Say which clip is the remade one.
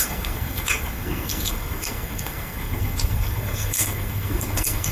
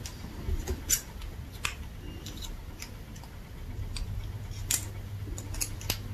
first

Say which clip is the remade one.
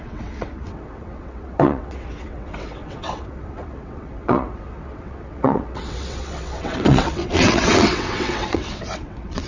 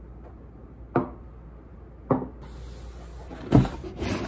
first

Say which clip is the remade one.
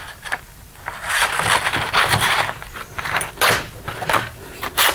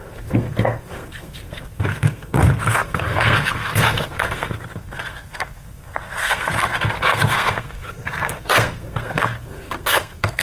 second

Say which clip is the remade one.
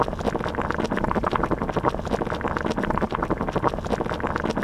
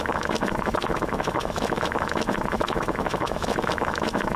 second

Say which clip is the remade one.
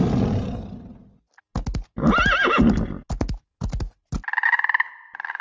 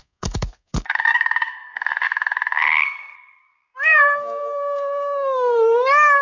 second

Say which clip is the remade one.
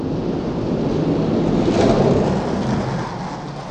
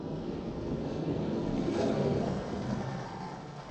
second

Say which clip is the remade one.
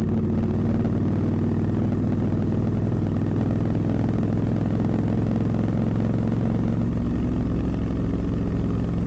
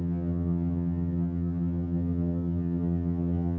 second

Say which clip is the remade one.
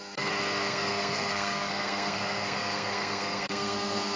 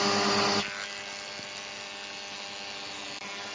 first